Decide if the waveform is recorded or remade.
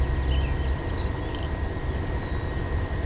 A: remade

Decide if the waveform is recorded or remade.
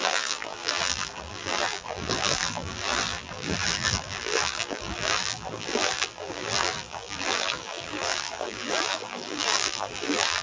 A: remade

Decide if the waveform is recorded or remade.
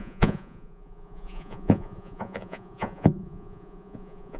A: remade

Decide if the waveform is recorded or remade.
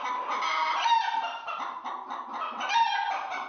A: recorded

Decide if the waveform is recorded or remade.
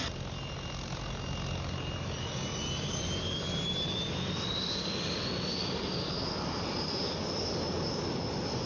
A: recorded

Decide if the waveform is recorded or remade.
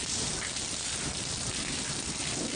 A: recorded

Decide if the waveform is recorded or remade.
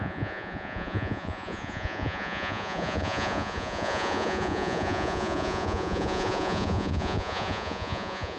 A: remade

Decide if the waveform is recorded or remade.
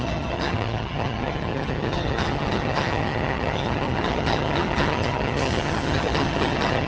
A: remade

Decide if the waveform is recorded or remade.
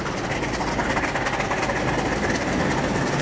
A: recorded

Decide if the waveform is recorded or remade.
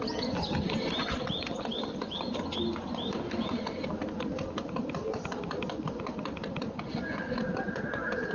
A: recorded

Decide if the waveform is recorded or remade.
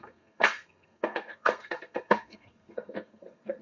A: remade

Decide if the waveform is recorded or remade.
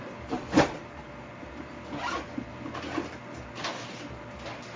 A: recorded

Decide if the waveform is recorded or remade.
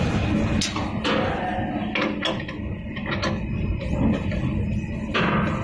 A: recorded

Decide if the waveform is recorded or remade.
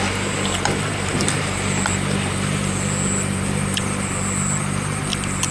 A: recorded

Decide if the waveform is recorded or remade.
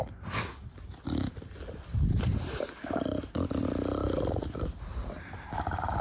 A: recorded